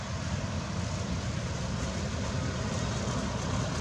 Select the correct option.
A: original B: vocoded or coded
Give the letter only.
A